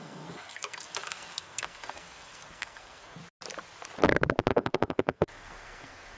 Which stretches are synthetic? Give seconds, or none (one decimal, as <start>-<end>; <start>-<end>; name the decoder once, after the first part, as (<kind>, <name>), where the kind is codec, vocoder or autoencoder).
0.0-3.2 (codec, SNAC); 4.5-6.2